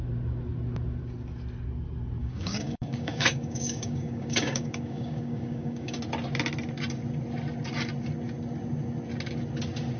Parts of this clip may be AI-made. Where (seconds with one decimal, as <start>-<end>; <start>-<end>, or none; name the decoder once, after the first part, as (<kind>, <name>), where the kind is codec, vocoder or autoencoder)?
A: 2.2-6.0 (codec, DAC)